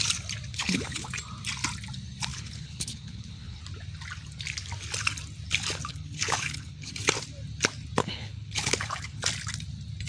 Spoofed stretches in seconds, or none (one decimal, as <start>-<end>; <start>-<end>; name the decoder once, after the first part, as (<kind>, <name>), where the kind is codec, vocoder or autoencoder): 0.5-1.1 (codec, HILCodec); 2.3-3.6; 5.9-6.9; 8.0-9.2